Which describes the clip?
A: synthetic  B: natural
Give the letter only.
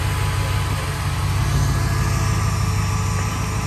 B